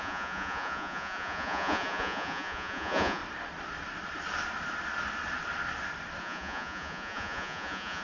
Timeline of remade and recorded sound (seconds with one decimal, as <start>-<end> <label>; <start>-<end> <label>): 0.0-3.2 remade; 3.2-6.2 recorded; 6.2-8.0 remade